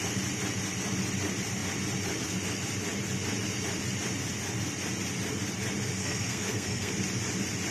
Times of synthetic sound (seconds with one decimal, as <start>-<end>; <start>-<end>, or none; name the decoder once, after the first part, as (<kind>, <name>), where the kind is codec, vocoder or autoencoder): 6.0-6.9 (codec, SNAC)